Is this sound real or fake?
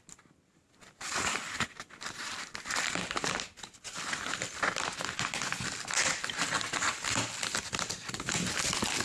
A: real